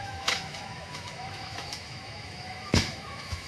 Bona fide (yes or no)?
no